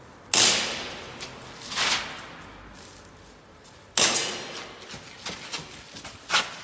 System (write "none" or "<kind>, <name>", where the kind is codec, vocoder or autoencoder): none